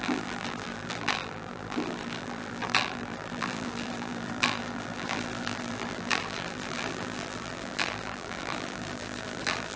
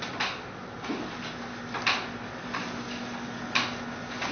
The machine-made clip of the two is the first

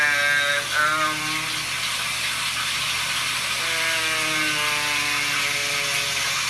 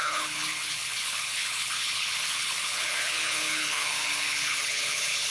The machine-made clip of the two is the second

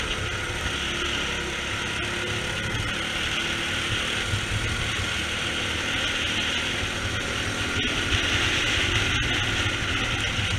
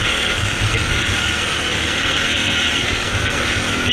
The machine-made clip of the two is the second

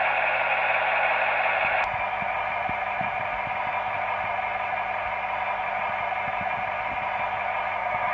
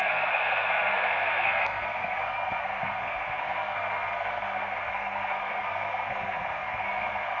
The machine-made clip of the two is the second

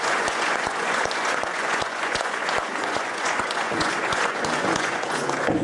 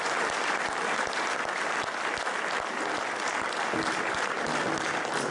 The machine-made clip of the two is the first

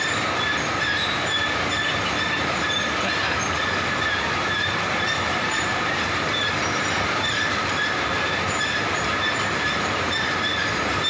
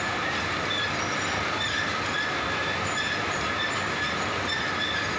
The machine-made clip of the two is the first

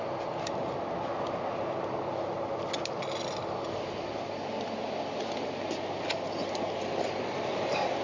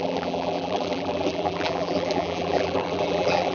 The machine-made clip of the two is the second